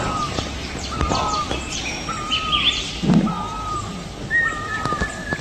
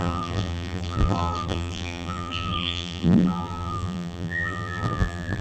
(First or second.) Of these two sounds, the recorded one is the first